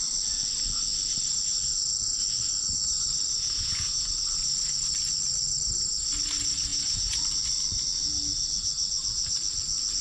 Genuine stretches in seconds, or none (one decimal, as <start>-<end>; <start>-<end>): 0.0-3.3; 4.1-6.7; 7.2-10.0